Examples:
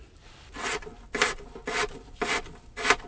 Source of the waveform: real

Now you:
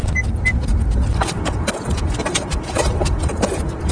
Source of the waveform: fake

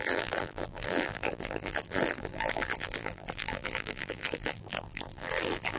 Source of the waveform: fake